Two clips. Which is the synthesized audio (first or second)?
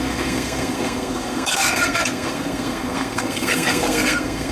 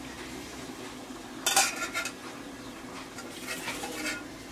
first